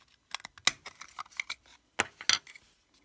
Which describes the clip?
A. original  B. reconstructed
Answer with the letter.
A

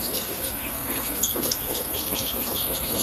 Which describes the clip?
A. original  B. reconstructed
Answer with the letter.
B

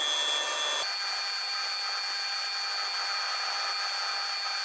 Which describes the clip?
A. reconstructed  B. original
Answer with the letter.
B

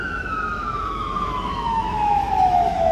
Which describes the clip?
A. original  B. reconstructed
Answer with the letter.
B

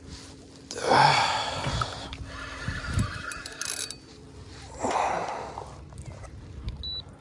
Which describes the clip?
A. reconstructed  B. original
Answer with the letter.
B